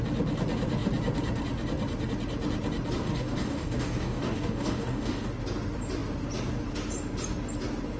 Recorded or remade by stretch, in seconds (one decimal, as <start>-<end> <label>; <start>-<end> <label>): 0.0-3.0 recorded; 3.0-5.3 remade; 5.3-8.0 recorded